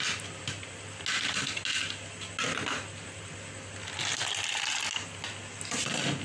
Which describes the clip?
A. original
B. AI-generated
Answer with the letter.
A